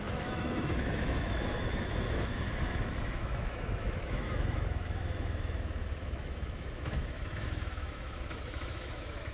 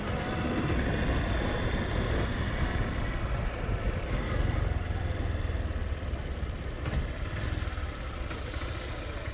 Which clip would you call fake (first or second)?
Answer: first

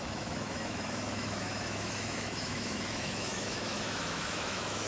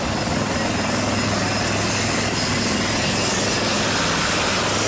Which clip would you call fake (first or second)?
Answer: first